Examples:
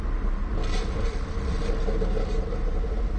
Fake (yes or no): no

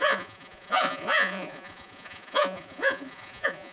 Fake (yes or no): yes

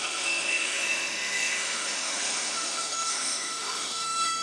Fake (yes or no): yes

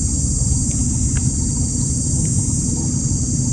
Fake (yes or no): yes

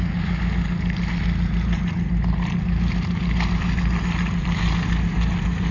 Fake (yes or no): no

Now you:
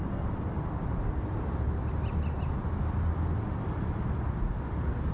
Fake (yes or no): no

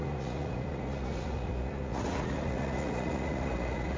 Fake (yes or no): yes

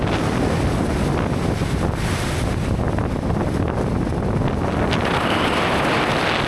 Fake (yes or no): no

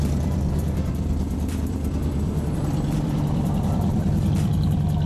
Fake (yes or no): yes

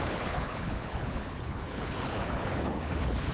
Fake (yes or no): yes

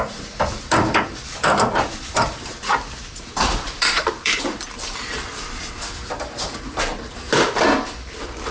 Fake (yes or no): yes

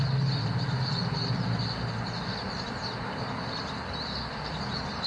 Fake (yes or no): no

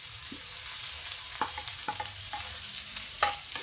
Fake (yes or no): yes